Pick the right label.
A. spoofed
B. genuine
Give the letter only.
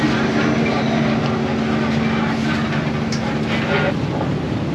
B